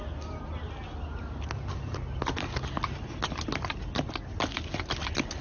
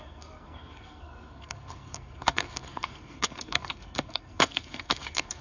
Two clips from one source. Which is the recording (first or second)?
first